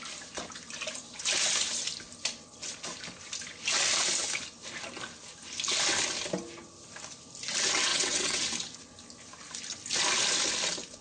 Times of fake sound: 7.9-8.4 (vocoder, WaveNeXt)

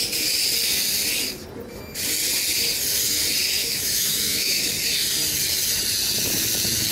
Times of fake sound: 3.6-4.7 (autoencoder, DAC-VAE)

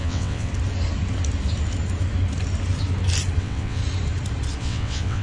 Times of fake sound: 0.0-0.5 (vocoder, WaveNeXt); 3.4-3.8; 4.6-5.2

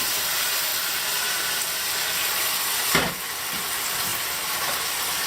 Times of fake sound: none

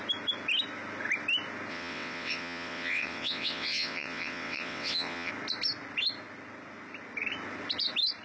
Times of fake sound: 1.7-5.3 (vocoder, WaveNeXt)